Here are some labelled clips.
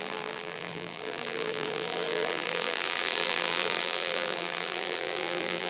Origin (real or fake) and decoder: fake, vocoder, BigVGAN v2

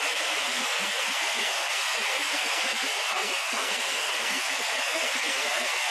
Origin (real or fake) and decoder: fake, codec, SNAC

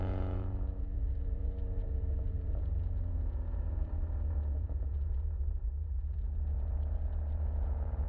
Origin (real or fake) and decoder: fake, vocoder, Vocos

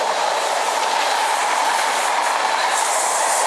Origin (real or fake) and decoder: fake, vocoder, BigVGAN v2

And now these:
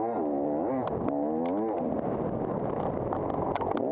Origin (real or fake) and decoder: real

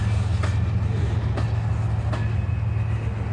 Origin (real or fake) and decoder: real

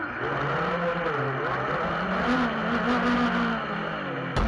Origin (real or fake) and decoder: real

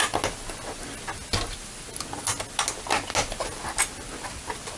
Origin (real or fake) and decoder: real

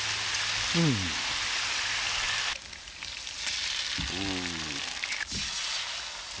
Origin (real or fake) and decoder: real